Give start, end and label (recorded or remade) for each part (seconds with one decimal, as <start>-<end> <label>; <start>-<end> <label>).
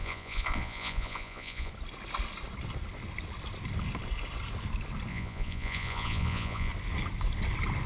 0.0-1.7 remade; 1.7-5.1 recorded; 5.1-6.7 remade; 6.7-7.9 recorded